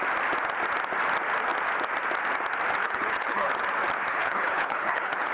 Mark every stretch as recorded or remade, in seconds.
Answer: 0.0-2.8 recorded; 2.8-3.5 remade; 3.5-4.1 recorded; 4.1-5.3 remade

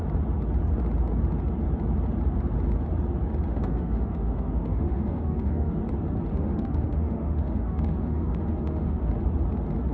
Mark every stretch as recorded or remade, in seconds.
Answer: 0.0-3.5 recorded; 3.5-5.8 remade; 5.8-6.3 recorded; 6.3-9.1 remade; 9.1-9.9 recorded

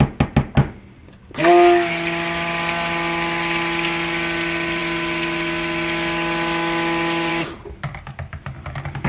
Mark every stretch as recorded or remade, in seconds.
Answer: 0.0-9.1 recorded

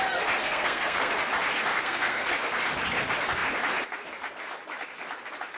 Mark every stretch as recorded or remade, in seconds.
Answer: 0.0-0.4 recorded; 0.4-1.1 remade; 1.1-1.7 recorded; 1.7-2.3 remade; 2.3-5.6 recorded

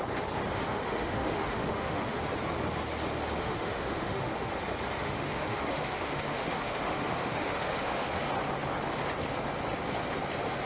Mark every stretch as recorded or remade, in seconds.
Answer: 0.0-0.5 recorded; 0.5-2.2 remade; 2.2-3.4 recorded; 3.4-4.6 remade; 4.6-5.0 recorded; 5.0-8.2 remade; 8.2-10.7 recorded